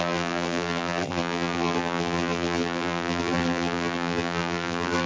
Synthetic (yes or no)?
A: yes